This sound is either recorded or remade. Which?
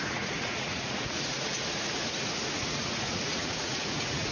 remade